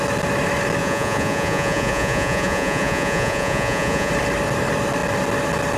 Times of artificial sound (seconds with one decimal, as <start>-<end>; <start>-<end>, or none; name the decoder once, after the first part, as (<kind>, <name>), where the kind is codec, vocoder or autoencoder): 0.8-4.1 (vocoder, Vocos)